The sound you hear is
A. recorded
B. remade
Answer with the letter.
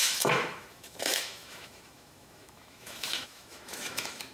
B